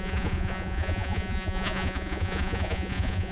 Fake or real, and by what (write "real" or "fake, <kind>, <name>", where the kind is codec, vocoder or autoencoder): fake, vocoder, Vocos